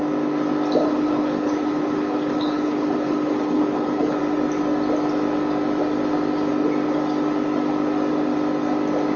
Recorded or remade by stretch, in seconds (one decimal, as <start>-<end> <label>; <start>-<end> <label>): 0.0-0.8 recorded; 0.8-4.2 remade; 4.2-9.2 recorded